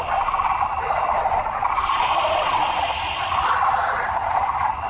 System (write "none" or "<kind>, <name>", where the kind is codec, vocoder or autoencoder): none